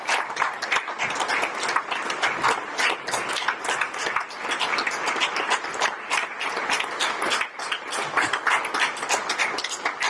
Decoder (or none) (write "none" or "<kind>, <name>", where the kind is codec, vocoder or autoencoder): none